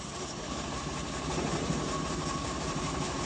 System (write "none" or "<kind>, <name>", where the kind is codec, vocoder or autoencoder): vocoder, BigVGAN v2